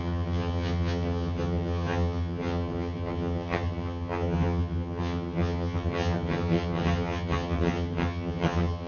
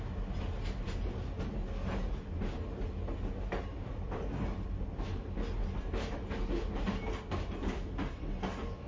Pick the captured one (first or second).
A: second